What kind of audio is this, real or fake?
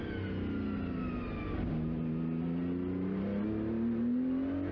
real